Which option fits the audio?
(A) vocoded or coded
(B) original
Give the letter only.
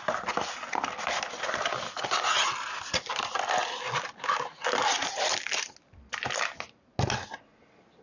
B